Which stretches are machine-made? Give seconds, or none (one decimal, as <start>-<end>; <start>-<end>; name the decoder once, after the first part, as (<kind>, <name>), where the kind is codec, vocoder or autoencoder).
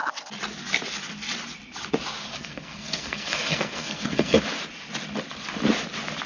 2.3-4.4 (codec, SNAC)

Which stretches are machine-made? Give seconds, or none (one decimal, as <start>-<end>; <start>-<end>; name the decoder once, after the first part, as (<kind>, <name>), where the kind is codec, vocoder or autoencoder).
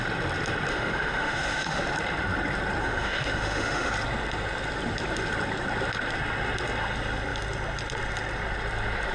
0.7-1.8 (autoencoder, DAC-VAE); 2.8-3.9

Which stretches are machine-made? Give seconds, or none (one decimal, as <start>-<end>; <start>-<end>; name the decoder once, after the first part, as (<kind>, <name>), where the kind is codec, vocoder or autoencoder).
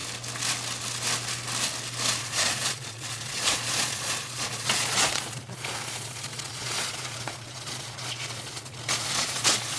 2.2-9.8 (vocoder, Vocos)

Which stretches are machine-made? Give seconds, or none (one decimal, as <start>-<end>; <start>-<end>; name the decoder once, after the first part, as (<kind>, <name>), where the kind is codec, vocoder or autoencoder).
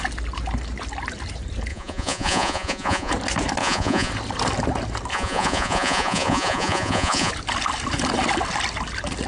1.7-3.1 (vocoder, Vocos); 3.6-4.1; 5.1-7.3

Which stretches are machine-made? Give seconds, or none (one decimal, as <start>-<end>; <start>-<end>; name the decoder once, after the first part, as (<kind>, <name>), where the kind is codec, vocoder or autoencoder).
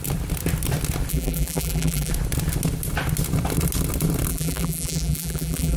1.1-2.1 (vocoder, BigVGAN v2); 4.3-5.8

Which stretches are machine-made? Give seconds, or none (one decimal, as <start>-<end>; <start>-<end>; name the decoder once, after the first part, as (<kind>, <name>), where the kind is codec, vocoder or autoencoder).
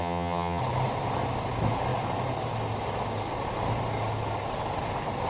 0.0-0.6 (vocoder, HiFi-GAN)